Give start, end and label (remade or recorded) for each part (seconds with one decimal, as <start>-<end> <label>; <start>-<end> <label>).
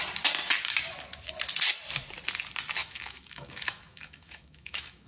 0.0-2.8 recorded; 2.8-5.1 remade